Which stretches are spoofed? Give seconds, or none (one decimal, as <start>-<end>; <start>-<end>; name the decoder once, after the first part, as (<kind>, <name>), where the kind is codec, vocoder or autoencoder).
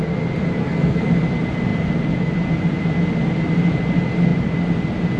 0.6-1.1 (codec, SNAC)